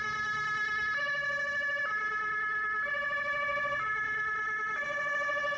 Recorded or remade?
recorded